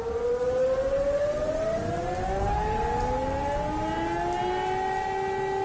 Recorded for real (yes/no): yes